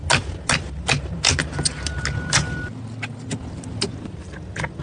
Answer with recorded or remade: recorded